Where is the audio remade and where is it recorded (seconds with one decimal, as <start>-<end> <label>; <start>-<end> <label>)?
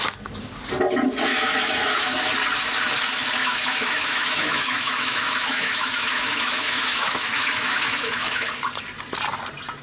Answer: 0.0-1.3 recorded; 1.3-2.3 remade; 2.3-3.4 recorded; 3.4-8.5 remade; 8.5-9.8 recorded